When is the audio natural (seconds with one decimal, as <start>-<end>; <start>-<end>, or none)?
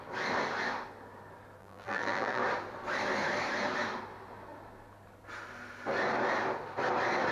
0.0-1.6; 2.4-7.3